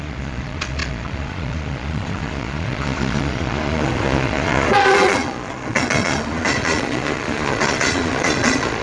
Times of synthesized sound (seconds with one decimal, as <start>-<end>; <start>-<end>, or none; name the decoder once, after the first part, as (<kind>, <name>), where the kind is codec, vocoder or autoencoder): 0.0-8.8 (vocoder, Vocos)